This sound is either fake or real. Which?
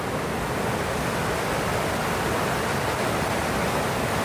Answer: real